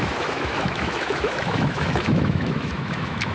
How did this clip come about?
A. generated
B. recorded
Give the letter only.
A